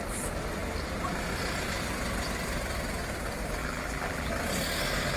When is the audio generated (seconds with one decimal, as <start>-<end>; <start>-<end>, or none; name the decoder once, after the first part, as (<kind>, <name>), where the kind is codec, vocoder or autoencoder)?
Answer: 3.6-4.3 (vocoder, BigVGAN v2)